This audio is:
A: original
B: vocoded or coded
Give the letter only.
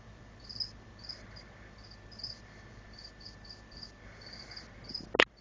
A